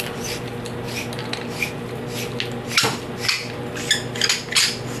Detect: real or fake real